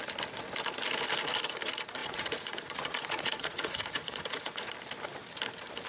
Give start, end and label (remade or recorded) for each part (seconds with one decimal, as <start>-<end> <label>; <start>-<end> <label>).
0.0-2.0 recorded; 2.0-4.7 remade; 4.7-5.9 recorded